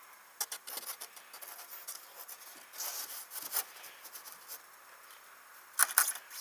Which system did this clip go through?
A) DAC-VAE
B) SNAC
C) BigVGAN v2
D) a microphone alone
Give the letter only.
D